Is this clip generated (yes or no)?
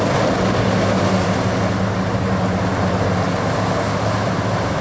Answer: no